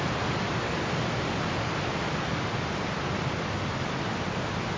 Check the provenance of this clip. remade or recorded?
recorded